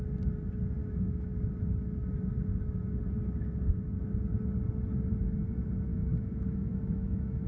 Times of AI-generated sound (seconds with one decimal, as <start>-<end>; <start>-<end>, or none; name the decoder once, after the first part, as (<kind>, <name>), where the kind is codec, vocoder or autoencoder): 0.8-1.4 (autoencoder, DAC-VAE); 5.9-7.5